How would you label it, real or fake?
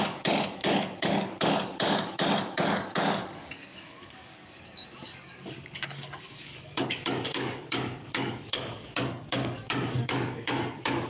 fake